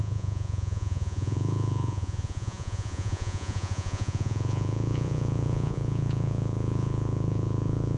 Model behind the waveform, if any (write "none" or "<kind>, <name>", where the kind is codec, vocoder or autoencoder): vocoder, Vocos